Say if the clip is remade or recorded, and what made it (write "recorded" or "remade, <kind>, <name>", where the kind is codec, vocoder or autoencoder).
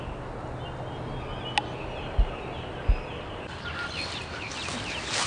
recorded